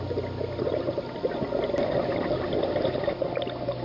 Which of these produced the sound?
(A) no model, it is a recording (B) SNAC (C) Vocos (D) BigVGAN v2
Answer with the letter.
A